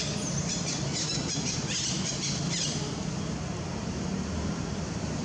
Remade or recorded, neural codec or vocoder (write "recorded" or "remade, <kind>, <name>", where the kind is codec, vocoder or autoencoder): recorded